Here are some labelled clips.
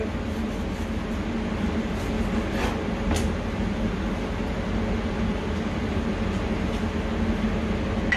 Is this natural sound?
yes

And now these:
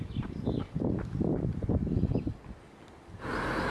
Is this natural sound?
yes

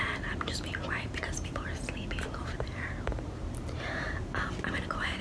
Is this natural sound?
no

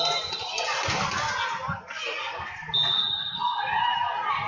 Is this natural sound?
yes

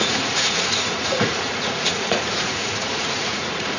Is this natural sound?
no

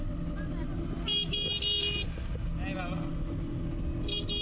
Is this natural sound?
yes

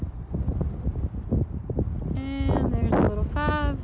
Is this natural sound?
yes